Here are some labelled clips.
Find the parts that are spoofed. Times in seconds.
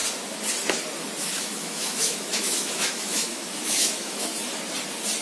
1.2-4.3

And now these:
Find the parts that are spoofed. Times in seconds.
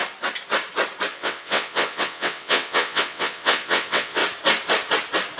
1.1-4.2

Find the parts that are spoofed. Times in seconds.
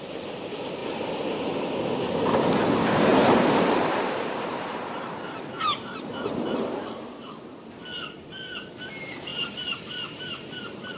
3.1-7.1; 9.3-11.0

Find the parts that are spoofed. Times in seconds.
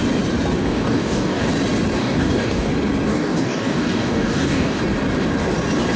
0.6-1.5; 2.0-2.7; 3.1-4.8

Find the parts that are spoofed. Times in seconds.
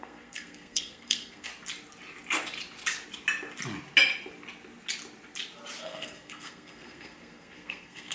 0.0-1.5; 5.8-8.1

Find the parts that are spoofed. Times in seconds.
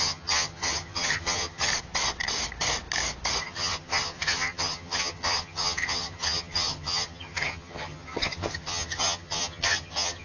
0.0-1.7; 3.4-10.2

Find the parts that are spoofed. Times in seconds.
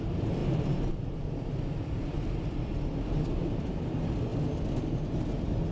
0.0-0.4; 0.9-4.3; 5.2-5.7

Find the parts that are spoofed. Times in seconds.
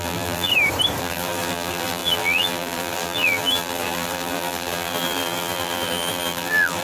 0.0-0.5; 1.0-6.8